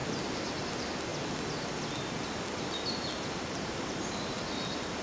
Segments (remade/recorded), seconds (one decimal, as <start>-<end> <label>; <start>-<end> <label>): 0.0-5.0 recorded